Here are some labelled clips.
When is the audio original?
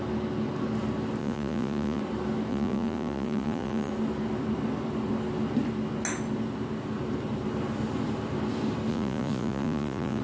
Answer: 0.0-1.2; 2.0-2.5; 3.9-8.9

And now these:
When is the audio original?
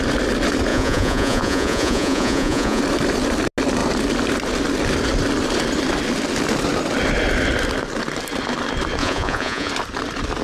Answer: 0.0-0.7; 2.8-9.0; 9.7-10.4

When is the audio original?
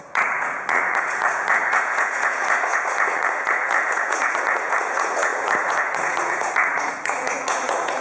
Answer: none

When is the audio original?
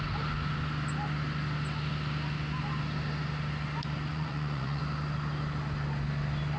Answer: 0.0-4.1; 4.8-6.6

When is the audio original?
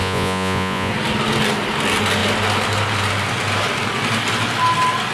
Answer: 0.9-5.1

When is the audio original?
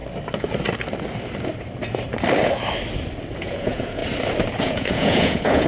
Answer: 0.0-3.4; 4.0-4.6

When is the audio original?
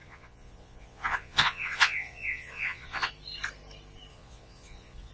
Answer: 3.1-4.1